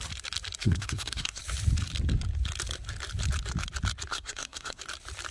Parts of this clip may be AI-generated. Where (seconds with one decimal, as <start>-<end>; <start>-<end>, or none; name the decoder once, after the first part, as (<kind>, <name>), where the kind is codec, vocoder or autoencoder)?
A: 0.6-1.4 (codec, SNAC); 4.1-4.8

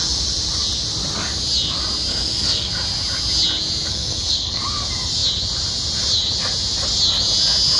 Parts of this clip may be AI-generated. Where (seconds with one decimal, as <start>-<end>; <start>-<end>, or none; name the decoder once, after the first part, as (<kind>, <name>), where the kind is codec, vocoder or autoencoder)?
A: 2.1-2.7 (codec, SNAC); 3.9-4.6

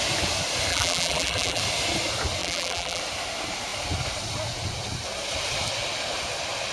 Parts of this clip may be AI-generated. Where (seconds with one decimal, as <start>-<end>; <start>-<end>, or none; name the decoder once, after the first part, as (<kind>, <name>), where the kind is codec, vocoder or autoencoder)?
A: 0.7-1.6 (vocoder, BigVGAN v2); 2.4-3.0

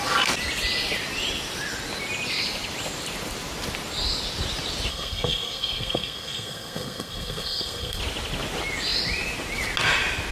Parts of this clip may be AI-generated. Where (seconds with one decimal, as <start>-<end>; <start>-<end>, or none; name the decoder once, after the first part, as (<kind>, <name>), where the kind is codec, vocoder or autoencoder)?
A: 4.9-8.0 (codec, SNAC)

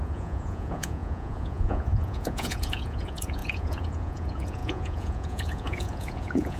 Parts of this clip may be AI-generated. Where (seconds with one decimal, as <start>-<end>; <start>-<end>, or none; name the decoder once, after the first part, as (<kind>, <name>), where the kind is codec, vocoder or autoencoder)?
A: 0.0-6.6 (vocoder, Vocos)

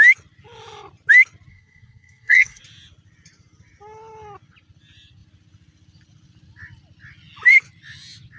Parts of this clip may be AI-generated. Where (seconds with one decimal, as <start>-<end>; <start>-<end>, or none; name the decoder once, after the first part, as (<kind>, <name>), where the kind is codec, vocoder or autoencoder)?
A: 1.5-2.6 (codec, SNAC)

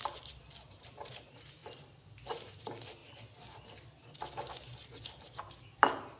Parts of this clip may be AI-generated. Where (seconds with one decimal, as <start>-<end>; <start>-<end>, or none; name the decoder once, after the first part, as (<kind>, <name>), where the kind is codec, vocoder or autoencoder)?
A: 0.0-3.0 (vocoder, BigVGAN v2)

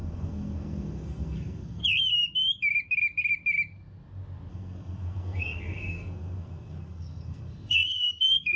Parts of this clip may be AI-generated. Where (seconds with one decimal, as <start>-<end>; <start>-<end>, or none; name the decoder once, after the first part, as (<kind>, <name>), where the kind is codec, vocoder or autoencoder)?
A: 0.0-1.8 (codec, SNAC); 4.5-8.6